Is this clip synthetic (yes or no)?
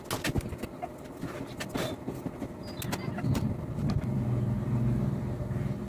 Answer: no